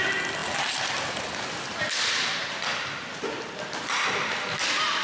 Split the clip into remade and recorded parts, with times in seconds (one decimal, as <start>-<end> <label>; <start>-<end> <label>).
0.0-5.0 recorded